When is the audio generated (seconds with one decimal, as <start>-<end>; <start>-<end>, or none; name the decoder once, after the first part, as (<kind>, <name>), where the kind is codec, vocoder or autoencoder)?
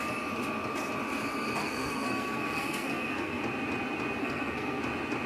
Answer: 1.6-3.4 (codec, SNAC); 4.2-4.8